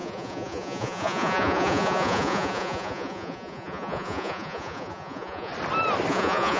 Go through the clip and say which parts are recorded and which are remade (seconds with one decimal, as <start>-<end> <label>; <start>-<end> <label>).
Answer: 0.0-5.5 remade; 5.5-6.1 recorded; 6.1-6.6 remade